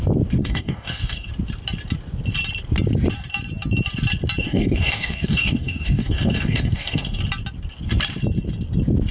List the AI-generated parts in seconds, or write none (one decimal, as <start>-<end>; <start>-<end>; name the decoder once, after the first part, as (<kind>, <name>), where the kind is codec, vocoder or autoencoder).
0.4-1.3 (codec, DAC); 4.4-7.2